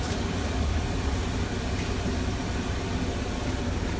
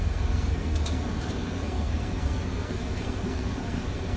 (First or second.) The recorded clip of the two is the first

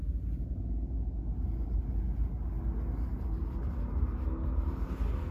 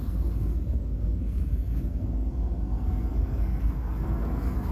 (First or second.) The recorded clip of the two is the first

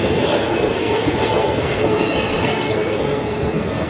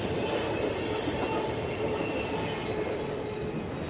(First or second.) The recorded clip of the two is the second